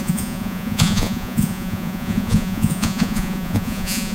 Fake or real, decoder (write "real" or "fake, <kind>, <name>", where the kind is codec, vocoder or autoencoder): fake, vocoder, Vocos